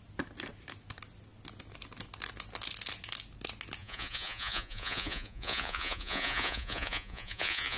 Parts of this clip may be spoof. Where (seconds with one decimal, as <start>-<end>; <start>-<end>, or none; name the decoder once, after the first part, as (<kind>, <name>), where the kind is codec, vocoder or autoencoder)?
3.8-7.8 (vocoder, Vocos)